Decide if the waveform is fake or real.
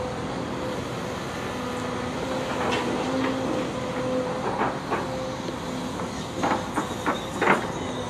real